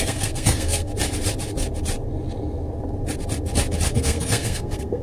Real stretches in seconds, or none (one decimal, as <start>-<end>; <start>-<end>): 0.9-3.9